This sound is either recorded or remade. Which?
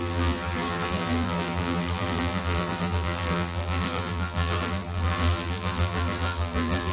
remade